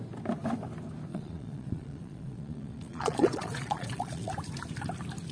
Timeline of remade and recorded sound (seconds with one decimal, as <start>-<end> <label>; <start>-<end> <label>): 0.0-1.1 recorded; 1.1-4.3 remade; 4.3-5.3 recorded

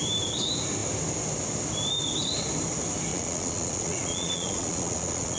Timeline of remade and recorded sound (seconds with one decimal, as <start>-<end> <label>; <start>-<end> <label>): 0.0-3.1 recorded; 3.1-5.4 remade